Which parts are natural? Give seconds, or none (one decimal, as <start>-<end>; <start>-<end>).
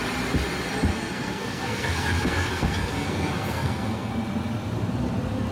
0.0-0.9; 4.1-5.5